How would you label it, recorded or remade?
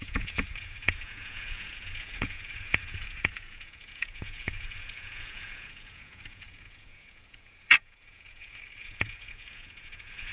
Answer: remade